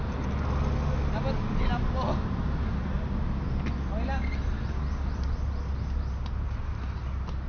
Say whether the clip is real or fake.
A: real